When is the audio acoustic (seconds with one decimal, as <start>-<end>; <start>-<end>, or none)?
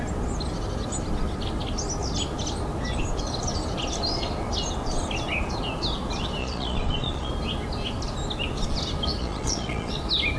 0.0-6.4; 7.3-9.2; 9.9-10.4